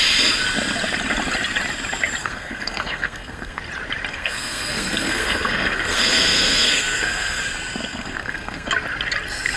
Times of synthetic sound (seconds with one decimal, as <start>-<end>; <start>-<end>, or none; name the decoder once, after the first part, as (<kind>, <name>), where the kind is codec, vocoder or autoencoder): 2.2-3.6 (codec, SNAC); 4.1-7.4; 7.9-8.7